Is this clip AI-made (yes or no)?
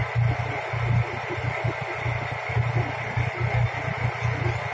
no